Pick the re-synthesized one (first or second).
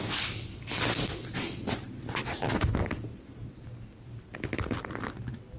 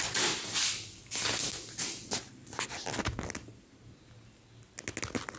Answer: first